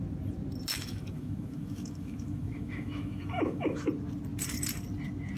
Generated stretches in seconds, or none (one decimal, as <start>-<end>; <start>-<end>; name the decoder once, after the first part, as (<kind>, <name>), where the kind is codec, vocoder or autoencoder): 0.7-3.9 (autoencoder, DAC-VAE)